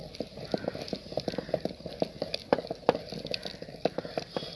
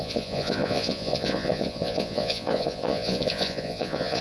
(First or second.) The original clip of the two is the first